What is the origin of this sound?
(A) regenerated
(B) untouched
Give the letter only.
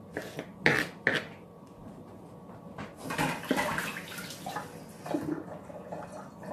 B